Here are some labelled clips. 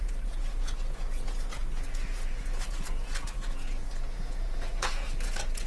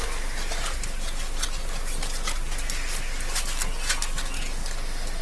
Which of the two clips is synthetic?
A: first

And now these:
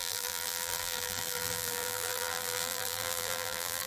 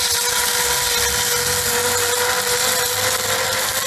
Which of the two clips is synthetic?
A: first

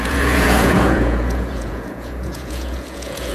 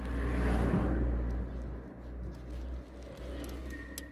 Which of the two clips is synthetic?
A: first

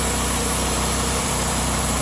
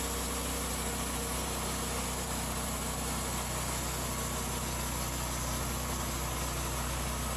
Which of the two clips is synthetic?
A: first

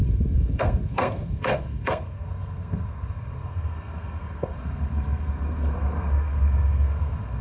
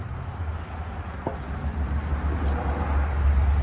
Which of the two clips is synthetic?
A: first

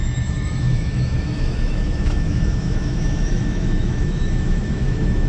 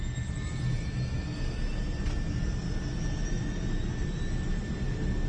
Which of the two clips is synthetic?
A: first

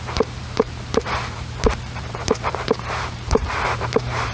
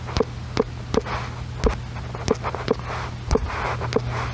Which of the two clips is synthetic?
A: first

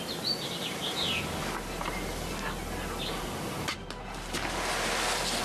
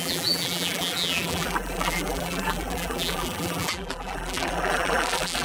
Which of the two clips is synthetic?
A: second